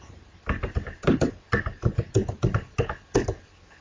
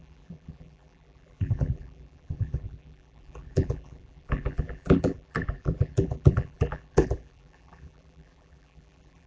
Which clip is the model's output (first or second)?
second